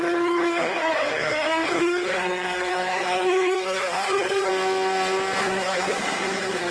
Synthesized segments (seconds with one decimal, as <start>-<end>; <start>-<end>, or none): 0.0-4.5; 5.4-6.7